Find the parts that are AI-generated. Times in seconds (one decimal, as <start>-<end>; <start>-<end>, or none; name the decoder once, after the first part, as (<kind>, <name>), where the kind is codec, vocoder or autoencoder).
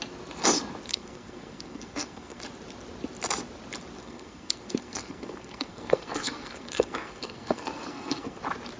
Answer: 0.9-2.4 (codec, SNAC); 4.0-8.4